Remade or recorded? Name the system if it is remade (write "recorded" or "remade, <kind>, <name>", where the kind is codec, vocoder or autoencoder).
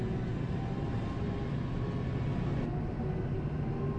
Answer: recorded